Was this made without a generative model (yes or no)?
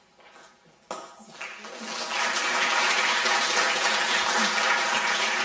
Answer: yes